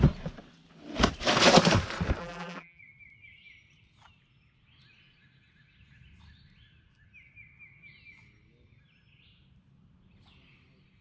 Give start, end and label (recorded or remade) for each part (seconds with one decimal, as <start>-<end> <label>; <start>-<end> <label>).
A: 0.0-2.2 recorded; 2.2-2.8 remade; 2.8-11.0 recorded